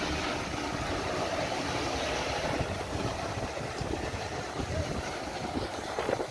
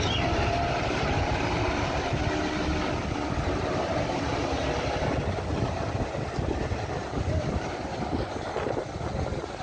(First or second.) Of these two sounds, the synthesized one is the first